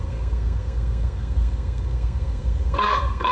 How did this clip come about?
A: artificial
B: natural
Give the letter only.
A